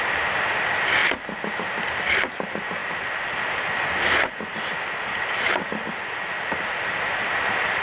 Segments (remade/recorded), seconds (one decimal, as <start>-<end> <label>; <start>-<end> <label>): 0.0-7.8 recorded